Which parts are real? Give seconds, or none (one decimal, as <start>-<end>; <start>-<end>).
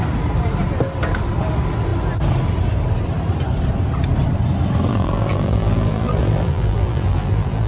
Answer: 0.0-4.9